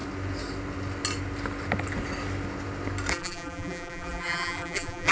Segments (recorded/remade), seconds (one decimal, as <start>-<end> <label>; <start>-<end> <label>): 0.0-3.1 recorded; 3.1-5.1 remade